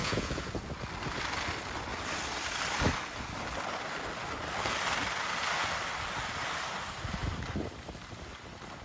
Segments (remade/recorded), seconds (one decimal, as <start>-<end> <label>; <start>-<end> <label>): 0.0-0.5 remade; 0.5-8.8 recorded